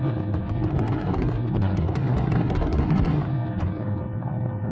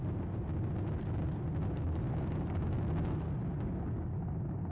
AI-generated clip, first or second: first